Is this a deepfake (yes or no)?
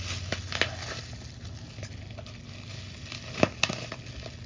no